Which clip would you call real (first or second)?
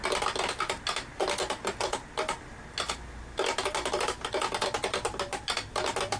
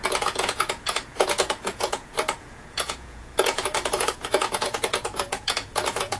first